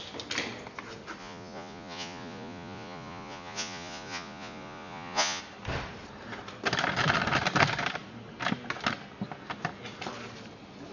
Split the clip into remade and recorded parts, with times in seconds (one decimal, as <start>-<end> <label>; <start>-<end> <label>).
0.0-1.2 recorded; 1.2-5.4 remade; 5.4-10.9 recorded